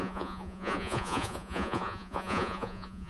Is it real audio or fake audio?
fake